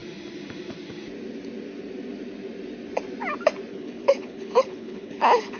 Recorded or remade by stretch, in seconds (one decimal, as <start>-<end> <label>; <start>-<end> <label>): 0.0-3.7 recorded; 3.7-5.6 remade